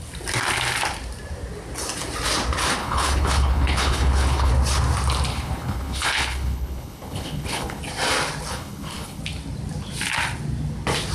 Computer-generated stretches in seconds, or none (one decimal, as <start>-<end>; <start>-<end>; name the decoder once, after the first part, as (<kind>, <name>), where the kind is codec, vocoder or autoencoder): 2.8-4.5 (codec, HILCodec); 5.3-7.8; 8.5-9.2

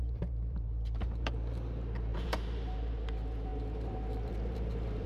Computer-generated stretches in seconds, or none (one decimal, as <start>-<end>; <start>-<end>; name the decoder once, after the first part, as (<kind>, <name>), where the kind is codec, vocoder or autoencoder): 0.0-5.1 (vocoder, BigVGAN v2)

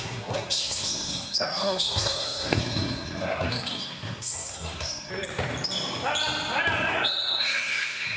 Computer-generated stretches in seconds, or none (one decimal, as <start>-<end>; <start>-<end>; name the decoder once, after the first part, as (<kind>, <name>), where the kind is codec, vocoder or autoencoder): 0.0-5.1 (codec, SNAC); 6.9-8.2

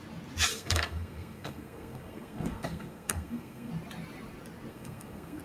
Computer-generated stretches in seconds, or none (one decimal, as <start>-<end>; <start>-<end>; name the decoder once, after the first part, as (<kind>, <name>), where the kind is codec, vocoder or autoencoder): 0.5-3.7 (codec, SNAC); 4.7-5.4

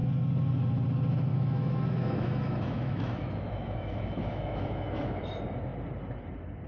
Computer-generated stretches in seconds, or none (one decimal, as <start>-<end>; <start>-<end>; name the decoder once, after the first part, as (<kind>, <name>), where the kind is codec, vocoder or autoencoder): 1.3-5.2 (autoencoder, DAC-VAE)